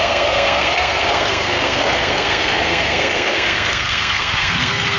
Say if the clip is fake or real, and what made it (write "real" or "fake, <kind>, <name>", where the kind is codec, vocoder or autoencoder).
fake, codec, SNAC